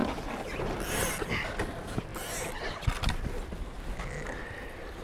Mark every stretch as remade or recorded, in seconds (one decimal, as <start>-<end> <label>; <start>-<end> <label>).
0.0-5.0 recorded